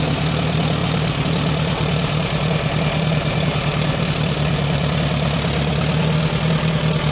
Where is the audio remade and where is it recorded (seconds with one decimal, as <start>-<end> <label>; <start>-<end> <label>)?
0.0-0.8 recorded; 0.8-5.0 remade; 5.0-7.1 recorded